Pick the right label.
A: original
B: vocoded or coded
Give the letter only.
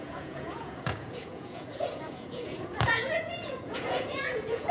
B